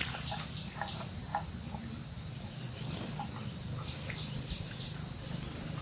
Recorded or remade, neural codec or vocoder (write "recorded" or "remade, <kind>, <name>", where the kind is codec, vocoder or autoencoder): recorded